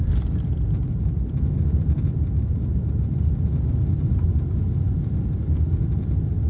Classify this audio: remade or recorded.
recorded